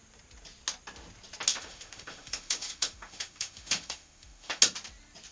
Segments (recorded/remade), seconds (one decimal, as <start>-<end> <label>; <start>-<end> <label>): 0.0-1.5 recorded; 1.5-4.6 remade; 4.6-5.3 recorded